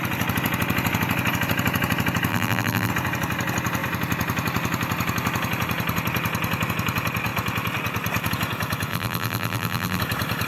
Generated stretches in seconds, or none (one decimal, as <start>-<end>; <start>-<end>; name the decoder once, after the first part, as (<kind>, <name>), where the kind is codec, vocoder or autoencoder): 2.3-2.9 (vocoder, BigVGAN v2); 8.9-10.0